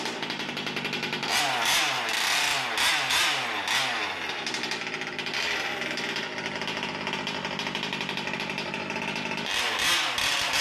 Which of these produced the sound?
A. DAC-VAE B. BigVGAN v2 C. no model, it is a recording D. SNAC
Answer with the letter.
C